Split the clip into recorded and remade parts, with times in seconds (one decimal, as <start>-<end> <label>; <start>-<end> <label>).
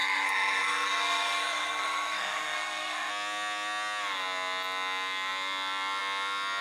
0.0-3.1 remade; 3.1-6.6 recorded